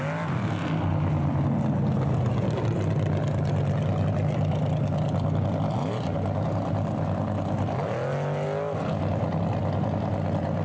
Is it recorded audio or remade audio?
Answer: recorded